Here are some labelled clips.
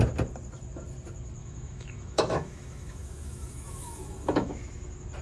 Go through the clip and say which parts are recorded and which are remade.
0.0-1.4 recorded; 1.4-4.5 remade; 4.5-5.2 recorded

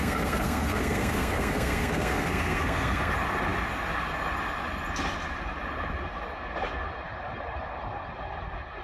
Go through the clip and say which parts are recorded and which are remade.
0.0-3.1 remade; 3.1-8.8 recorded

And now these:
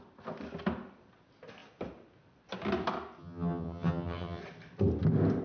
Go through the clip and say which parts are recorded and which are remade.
0.0-3.2 recorded; 3.2-4.4 remade; 4.4-5.4 recorded

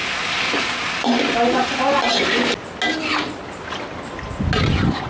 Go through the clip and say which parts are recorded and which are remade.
0.0-5.1 recorded

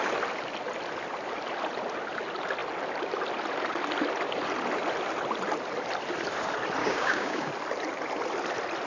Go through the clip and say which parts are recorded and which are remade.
0.0-6.8 recorded; 6.8-7.5 remade; 7.5-8.9 recorded

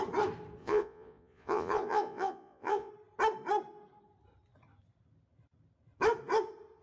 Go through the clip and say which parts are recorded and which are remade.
0.0-0.6 recorded; 0.6-2.9 remade; 2.9-6.8 recorded

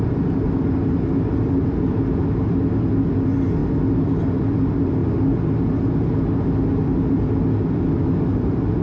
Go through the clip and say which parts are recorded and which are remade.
0.0-8.8 recorded